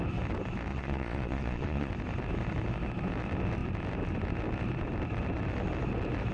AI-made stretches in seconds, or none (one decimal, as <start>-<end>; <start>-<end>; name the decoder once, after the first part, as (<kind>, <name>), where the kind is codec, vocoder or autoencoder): 0.7-1.9 (vocoder, Vocos)